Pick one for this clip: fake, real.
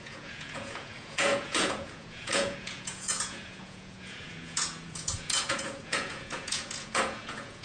fake